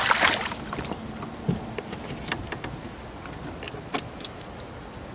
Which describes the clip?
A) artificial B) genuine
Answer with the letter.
B